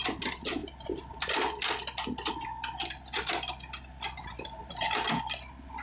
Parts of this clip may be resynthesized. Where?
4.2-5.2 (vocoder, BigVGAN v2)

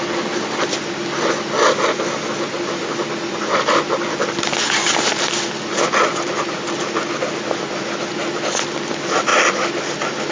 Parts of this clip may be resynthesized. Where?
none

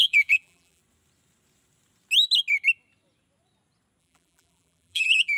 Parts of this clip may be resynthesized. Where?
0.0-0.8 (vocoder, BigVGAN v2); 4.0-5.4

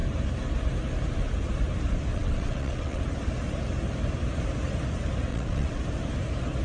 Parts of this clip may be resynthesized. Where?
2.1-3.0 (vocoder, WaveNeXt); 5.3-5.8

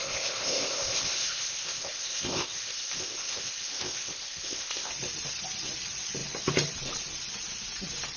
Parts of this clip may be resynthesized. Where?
0.0-4.9 (codec, ZipCodec)

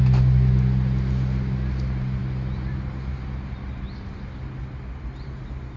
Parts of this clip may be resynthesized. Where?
none